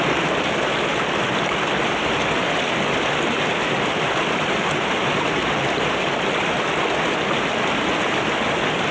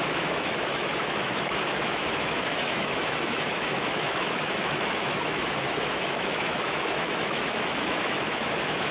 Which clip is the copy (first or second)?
second